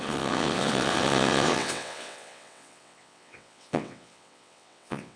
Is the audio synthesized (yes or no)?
yes